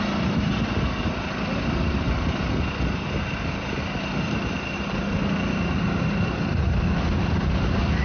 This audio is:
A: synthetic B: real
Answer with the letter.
B